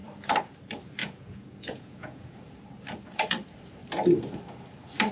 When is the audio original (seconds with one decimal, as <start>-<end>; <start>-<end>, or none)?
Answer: 0.0-1.0; 2.5-5.1